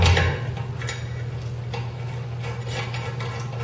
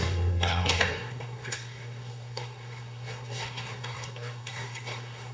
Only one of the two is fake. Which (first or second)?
second